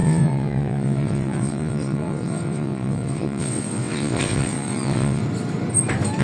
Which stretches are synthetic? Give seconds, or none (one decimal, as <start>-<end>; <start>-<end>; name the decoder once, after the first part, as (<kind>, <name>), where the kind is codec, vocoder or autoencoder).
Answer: 0.0-5.2 (vocoder, WaveNeXt)